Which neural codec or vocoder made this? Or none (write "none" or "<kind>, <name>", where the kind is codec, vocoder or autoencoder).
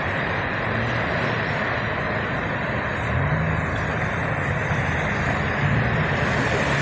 none